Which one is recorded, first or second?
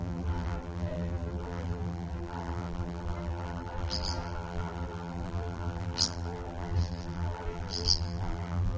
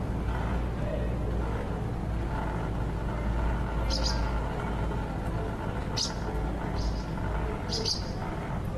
second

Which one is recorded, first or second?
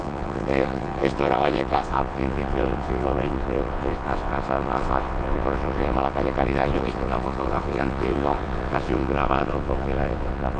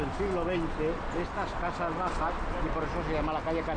second